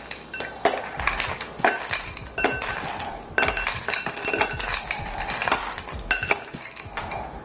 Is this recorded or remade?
recorded